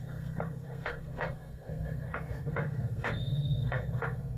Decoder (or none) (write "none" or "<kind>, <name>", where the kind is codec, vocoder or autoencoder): codec, SNAC